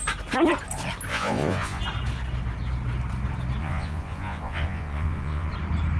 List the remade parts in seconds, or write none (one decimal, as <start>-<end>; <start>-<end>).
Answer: 1.1-1.8; 3.6-5.5